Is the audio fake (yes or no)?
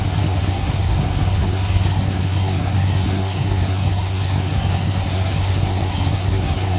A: yes